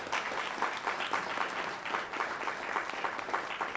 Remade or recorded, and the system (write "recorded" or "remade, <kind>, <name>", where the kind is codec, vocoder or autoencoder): recorded